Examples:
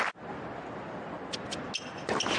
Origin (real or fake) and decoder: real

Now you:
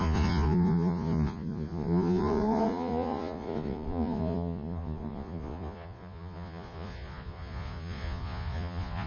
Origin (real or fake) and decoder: fake, vocoder, Vocos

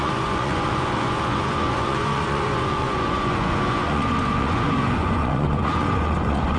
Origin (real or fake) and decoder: fake, vocoder, Vocos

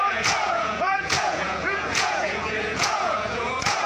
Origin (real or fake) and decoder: fake, vocoder, Vocos